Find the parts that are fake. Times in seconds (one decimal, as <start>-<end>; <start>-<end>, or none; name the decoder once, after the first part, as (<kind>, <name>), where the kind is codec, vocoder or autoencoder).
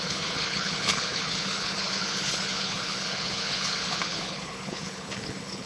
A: 0.0-5.7 (codec, HILCodec)